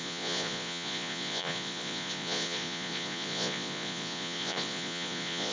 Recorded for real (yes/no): no